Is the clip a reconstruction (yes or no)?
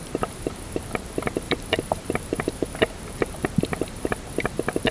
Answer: yes